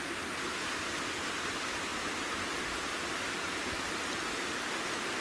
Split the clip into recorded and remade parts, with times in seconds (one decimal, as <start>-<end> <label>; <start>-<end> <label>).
0.0-5.2 recorded